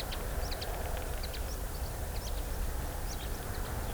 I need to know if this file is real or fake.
real